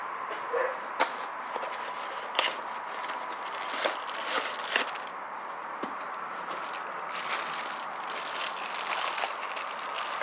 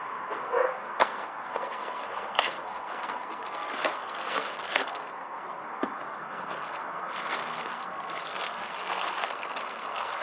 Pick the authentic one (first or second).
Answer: first